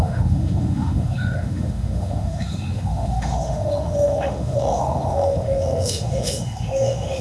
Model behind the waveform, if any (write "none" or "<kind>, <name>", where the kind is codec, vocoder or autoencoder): autoencoder, DAC-VAE